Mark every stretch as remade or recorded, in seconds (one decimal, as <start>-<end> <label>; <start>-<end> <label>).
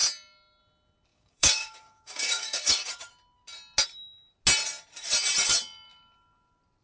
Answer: 0.0-1.1 recorded; 1.1-3.1 remade; 3.1-6.8 recorded